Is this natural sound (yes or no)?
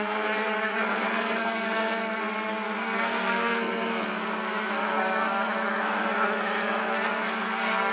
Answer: no